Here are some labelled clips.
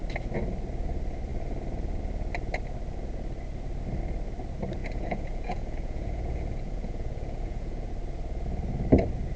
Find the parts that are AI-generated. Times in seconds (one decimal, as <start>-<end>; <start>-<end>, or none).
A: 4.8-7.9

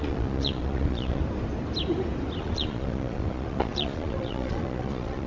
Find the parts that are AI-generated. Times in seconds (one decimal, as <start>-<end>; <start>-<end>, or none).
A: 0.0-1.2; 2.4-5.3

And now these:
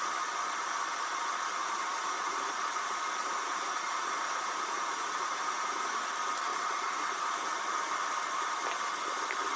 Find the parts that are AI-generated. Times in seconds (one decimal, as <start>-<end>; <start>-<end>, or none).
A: 1.6-6.1; 6.5-7.6